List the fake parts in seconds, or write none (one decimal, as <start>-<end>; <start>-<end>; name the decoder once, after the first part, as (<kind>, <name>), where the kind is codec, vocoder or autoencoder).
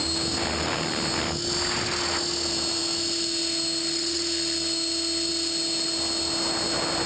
none